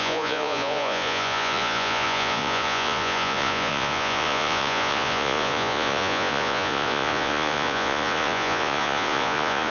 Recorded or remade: remade